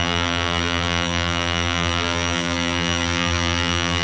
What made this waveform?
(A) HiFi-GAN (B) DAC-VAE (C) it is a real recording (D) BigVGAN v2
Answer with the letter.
D